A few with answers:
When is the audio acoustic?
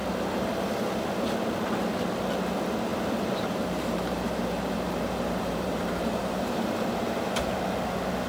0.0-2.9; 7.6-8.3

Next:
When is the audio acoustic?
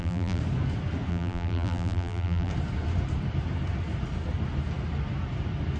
0.4-1.1; 2.5-5.8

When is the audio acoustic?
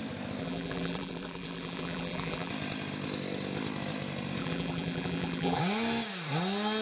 0.0-0.4; 2.5-4.4; 5.6-6.8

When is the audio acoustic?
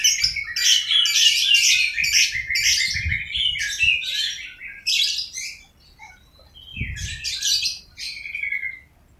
0.0-9.2